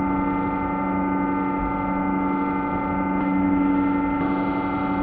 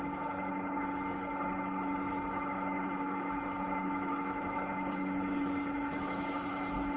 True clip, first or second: first